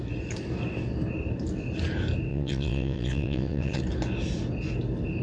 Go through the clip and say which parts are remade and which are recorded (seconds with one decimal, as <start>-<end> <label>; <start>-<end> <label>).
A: 0.0-2.3 recorded; 2.3-3.8 remade; 3.8-5.2 recorded